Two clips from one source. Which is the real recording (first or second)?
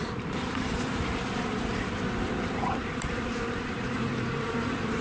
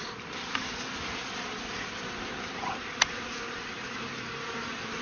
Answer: second